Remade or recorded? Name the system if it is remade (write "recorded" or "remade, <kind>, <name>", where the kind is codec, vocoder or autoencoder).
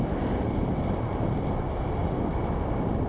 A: recorded